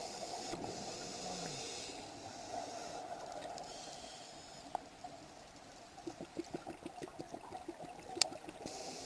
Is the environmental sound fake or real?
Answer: real